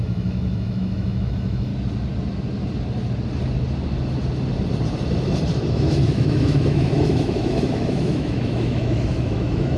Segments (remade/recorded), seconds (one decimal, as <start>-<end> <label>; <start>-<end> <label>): 0.0-1.7 remade; 1.7-5.7 recorded; 5.7-9.8 remade